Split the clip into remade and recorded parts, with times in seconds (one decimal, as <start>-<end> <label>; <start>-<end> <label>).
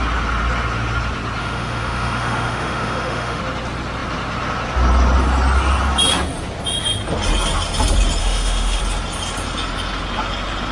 0.0-1.4 recorded; 1.4-3.4 remade; 3.4-8.2 recorded; 8.2-8.8 remade; 8.8-10.7 recorded